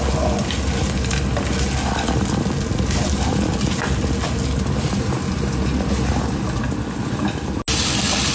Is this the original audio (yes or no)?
yes